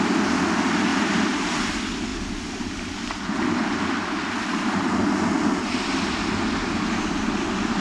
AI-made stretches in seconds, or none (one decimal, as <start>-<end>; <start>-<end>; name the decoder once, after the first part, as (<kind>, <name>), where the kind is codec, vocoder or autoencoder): 0.9-1.7 (vocoder, BigVGAN v2); 2.1-4.9